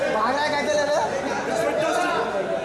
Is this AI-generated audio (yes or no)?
no